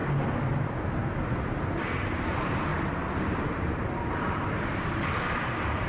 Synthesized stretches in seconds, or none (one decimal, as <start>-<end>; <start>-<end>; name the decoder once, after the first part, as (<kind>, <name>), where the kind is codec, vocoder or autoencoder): 1.4-5.9 (vocoder, BigVGAN v2)